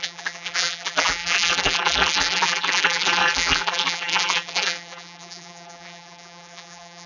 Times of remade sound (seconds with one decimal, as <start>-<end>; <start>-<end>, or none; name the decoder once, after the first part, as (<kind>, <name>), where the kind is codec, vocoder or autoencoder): 0.0-7.1 (vocoder, BigVGAN v2)